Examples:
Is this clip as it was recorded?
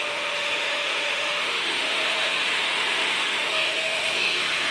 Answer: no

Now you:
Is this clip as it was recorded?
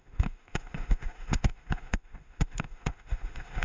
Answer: no